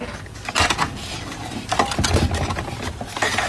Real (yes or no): yes